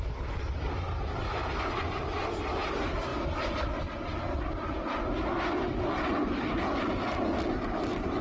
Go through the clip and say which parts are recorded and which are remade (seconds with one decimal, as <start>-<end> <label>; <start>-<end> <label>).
0.0-8.2 recorded